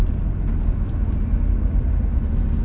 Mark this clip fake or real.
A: real